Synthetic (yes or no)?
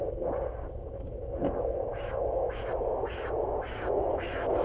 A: yes